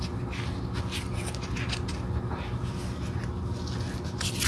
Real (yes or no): yes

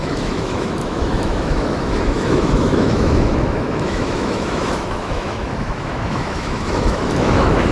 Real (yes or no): no